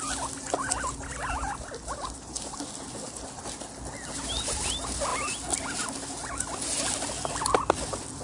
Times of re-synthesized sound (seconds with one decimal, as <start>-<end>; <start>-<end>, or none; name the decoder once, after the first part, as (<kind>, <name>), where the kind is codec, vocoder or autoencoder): none